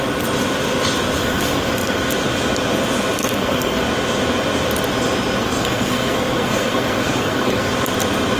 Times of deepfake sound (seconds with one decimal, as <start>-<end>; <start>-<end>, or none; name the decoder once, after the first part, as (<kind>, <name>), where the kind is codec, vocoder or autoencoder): 1.2-2.0 (codec, SNAC); 3.2-3.8; 5.4-7.7